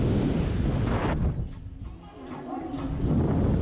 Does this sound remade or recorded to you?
recorded